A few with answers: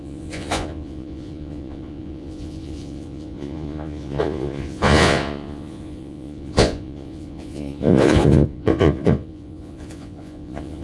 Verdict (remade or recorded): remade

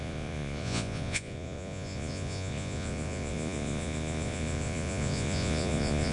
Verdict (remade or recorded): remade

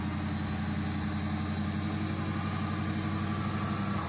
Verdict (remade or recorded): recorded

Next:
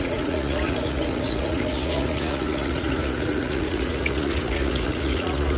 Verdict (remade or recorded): remade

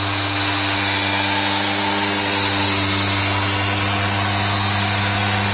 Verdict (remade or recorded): recorded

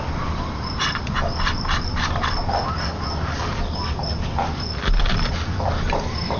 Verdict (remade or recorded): recorded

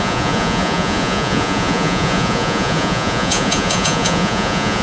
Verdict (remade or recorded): remade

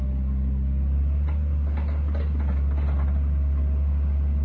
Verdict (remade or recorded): recorded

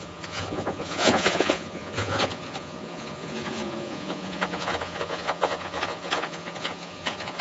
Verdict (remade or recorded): remade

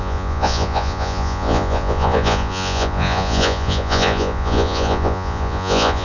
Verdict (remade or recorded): remade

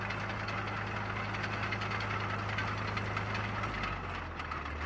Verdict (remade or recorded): recorded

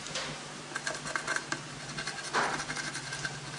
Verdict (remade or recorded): recorded